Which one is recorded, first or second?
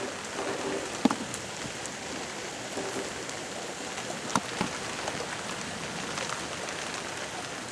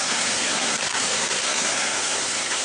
first